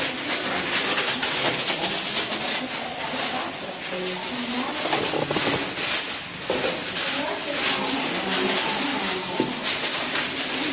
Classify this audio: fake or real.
real